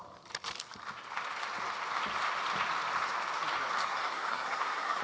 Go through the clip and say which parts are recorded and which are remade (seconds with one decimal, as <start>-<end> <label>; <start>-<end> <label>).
0.0-3.8 recorded; 3.8-5.0 remade

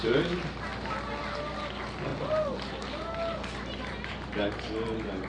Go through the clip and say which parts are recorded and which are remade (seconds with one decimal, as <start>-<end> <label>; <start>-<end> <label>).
0.0-5.3 recorded

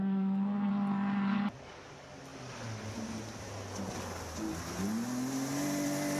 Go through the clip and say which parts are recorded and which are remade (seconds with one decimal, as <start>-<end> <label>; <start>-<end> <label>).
0.0-0.7 remade; 0.7-6.2 recorded

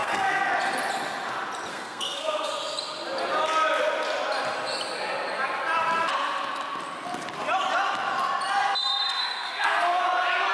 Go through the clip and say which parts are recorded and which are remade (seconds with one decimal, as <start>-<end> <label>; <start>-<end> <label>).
0.0-0.5 remade; 0.5-1.7 recorded; 1.7-2.5 remade; 2.5-9.2 recorded; 9.2-10.0 remade; 10.0-10.5 recorded

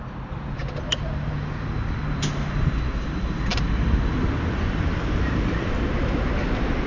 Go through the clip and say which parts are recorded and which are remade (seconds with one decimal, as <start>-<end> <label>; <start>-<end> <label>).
0.0-6.9 recorded

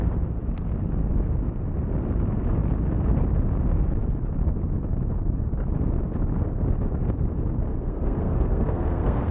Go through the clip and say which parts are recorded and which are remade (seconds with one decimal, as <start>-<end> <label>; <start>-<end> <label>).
0.0-7.7 recorded; 7.7-9.3 remade

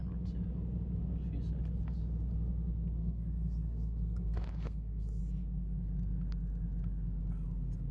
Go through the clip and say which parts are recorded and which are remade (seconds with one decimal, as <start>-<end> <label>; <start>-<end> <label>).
0.0-3.0 recorded; 3.0-5.2 remade; 5.2-7.9 recorded